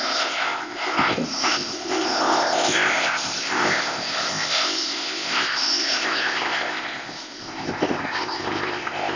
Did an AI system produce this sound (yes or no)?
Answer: yes